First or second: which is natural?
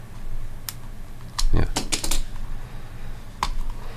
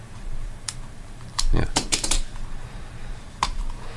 first